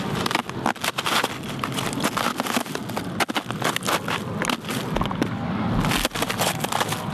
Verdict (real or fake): real